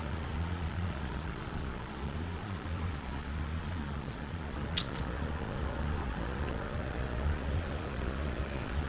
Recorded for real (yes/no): no